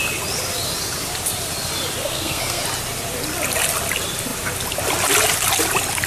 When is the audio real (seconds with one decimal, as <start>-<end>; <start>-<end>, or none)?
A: 0.0-2.0; 2.6-6.1